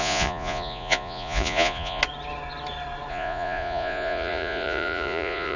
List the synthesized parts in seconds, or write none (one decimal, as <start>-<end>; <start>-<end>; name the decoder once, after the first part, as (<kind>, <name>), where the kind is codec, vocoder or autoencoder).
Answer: 0.0-2.0 (vocoder, Vocos); 3.1-5.6